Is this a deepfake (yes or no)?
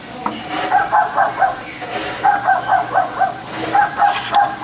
no